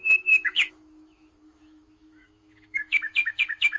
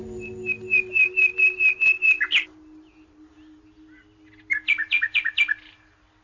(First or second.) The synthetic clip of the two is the first